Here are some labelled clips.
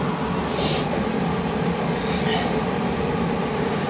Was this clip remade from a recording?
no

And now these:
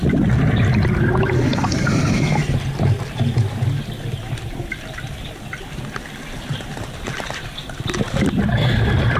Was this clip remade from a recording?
no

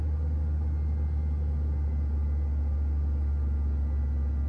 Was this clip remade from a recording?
no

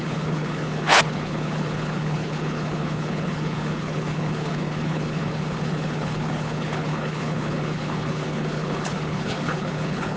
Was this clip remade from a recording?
yes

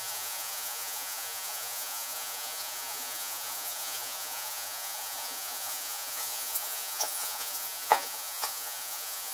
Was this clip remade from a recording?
yes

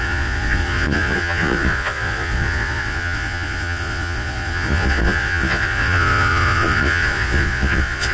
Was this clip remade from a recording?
yes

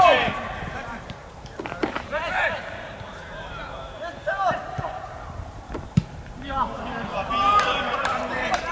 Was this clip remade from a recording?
yes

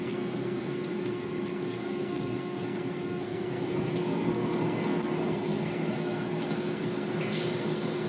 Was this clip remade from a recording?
yes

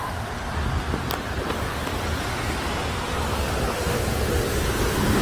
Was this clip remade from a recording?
yes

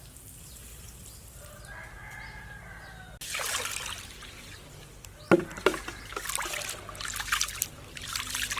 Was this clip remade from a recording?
no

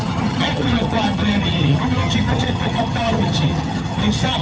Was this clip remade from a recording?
yes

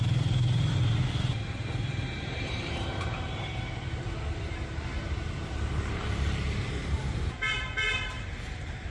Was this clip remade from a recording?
yes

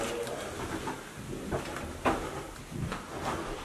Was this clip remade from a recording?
no